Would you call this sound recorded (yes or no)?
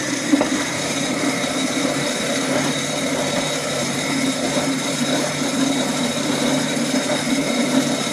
no